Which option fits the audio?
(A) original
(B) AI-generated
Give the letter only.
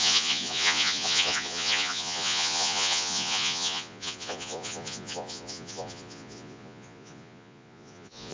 B